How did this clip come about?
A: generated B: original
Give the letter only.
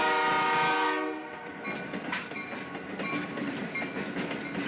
B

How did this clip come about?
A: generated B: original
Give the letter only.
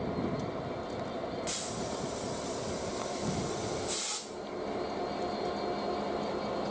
B